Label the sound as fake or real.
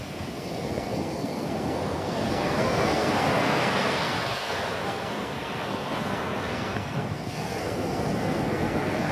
fake